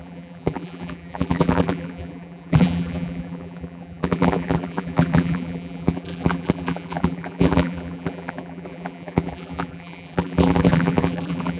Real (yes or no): no